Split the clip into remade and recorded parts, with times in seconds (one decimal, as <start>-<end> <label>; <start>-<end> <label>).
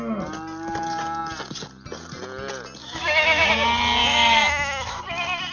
0.0-2.8 recorded; 2.8-3.5 remade; 3.5-4.0 recorded; 4.0-5.0 remade; 5.0-5.5 recorded